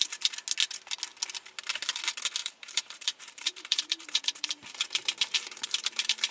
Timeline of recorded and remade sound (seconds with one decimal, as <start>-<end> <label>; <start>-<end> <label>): 0.0-2.4 recorded; 2.4-6.3 remade